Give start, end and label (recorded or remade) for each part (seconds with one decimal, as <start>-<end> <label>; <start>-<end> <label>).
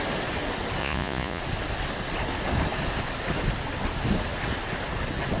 0.0-0.8 recorded; 0.8-1.4 remade; 1.4-5.4 recorded